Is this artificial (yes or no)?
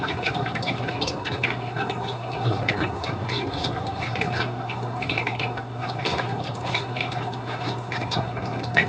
yes